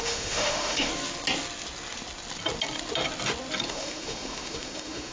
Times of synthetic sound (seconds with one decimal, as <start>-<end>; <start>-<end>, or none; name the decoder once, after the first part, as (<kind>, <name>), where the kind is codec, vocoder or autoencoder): 0.0-0.9 (autoencoder, DAC-VAE); 3.7-5.1